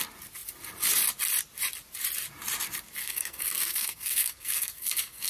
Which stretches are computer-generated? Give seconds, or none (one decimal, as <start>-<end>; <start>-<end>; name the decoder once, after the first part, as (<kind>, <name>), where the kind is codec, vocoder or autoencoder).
3.0-5.3 (codec, SNAC)